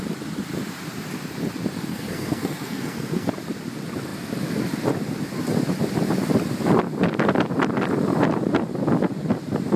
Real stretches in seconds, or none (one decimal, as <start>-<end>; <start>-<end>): 0.0-1.9; 3.3-9.8